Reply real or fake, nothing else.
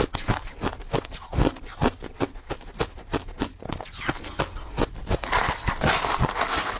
real